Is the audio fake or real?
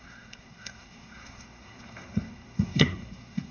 fake